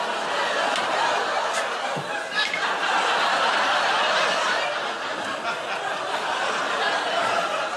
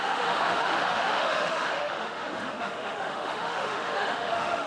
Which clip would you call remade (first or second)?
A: second